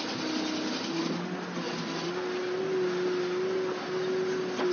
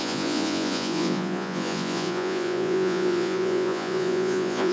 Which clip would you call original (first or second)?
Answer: first